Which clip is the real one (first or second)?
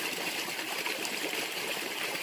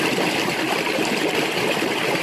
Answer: second